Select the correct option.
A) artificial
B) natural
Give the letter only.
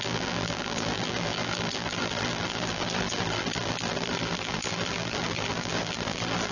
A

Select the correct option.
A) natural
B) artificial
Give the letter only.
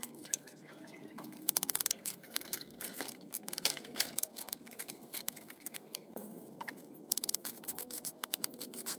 B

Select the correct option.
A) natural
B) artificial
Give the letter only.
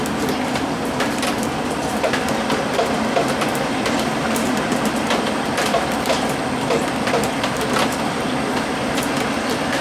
B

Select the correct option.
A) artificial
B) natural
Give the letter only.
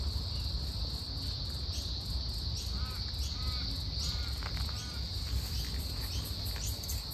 B